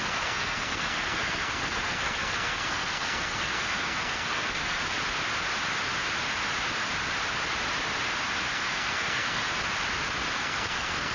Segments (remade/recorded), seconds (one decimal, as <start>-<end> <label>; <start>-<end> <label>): 0.0-4.8 remade; 4.8-8.5 recorded; 8.5-9.4 remade; 9.4-10.3 recorded; 10.3-11.1 remade